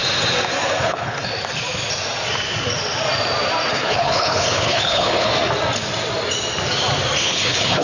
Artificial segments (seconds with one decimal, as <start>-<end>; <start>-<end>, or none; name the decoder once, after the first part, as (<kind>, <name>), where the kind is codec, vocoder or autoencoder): 0.8-1.3 (codec, HILCodec); 3.7-5.3; 7.2-7.8